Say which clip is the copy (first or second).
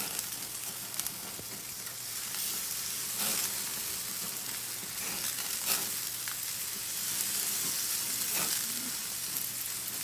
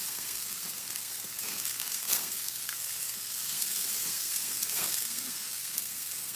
second